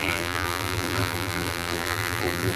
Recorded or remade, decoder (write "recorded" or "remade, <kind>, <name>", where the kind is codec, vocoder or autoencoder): remade, vocoder, BigVGAN v2